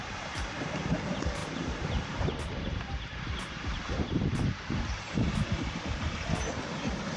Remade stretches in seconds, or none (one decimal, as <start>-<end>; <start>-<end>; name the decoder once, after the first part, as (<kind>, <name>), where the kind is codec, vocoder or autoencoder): 0.0-7.2 (vocoder, BigVGAN v2)